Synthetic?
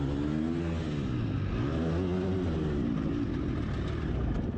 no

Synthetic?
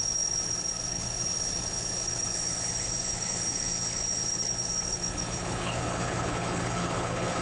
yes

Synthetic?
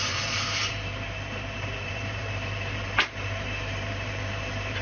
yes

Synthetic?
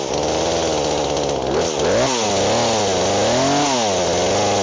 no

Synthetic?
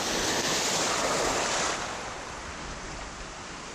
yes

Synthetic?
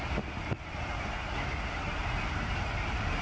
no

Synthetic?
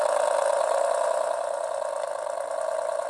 no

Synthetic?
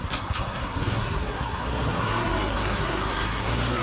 yes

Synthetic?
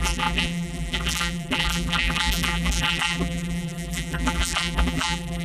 yes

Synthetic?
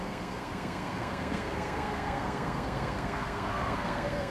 yes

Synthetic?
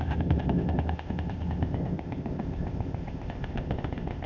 yes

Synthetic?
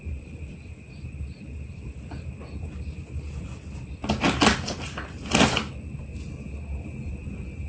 no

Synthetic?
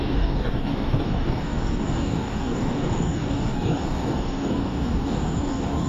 yes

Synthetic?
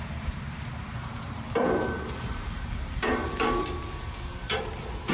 yes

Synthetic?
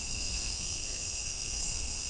yes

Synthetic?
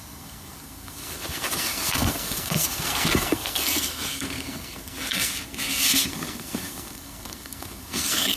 yes